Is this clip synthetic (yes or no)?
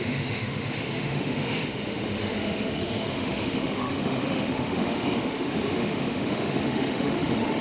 yes